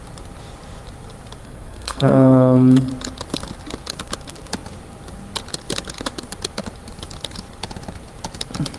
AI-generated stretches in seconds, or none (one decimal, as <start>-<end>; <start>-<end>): 1.4-2.9